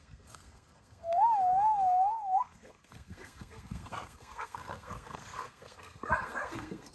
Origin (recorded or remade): remade